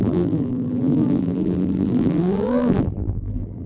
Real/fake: fake